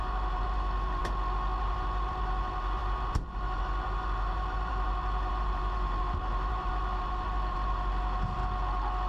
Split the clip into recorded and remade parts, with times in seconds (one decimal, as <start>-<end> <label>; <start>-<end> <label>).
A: 0.0-1.0 remade; 1.0-1.6 recorded; 1.6-8.4 remade; 8.4-9.1 recorded